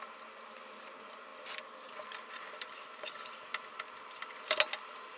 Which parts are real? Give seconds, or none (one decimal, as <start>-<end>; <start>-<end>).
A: 0.0-5.2